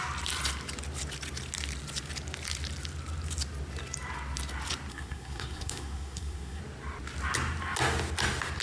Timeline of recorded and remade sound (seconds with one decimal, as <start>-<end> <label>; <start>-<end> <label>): 0.0-4.9 recorded; 4.9-6.6 remade; 6.6-8.6 recorded